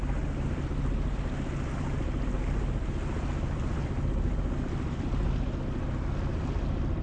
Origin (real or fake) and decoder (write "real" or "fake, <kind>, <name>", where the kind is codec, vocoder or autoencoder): real